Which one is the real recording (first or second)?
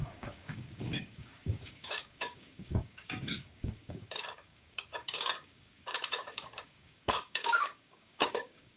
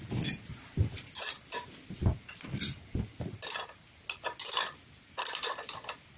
second